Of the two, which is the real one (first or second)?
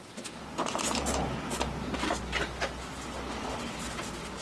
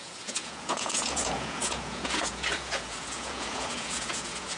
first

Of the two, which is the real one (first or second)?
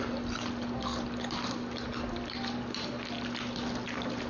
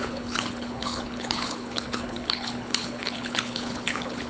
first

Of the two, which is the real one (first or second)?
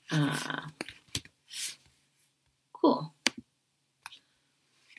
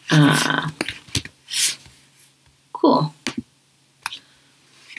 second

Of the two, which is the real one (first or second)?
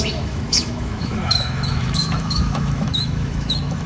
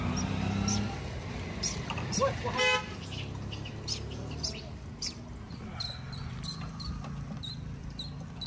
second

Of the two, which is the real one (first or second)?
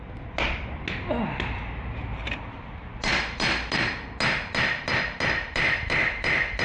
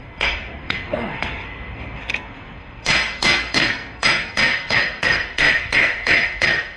first